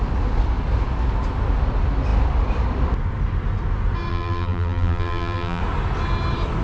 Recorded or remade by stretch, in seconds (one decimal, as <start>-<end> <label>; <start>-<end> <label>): 0.0-4.1 recorded; 4.1-5.6 remade; 5.6-6.6 recorded